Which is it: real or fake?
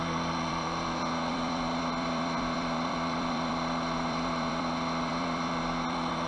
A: fake